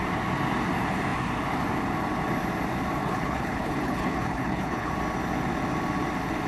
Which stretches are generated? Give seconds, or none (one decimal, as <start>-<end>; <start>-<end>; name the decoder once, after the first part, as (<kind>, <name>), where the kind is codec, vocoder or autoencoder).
3.0-4.9 (codec, HILCodec)